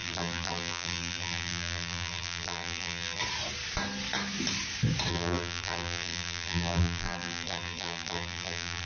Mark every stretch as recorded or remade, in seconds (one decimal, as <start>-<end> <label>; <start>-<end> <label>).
0.0-3.2 remade; 3.2-5.1 recorded; 5.1-8.8 remade